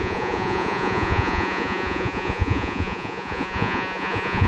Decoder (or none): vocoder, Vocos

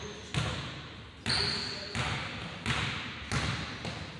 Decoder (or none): none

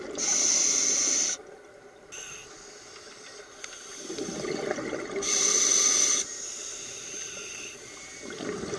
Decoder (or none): none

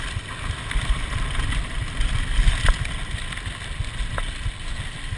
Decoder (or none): none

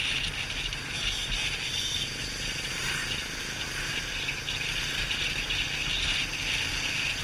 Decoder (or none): none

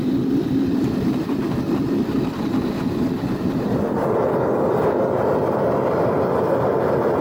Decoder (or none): none